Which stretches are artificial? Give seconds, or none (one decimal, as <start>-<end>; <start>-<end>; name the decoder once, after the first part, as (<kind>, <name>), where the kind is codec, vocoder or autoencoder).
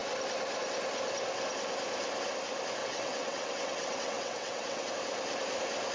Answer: 2.8-4.9 (vocoder, WaveNeXt)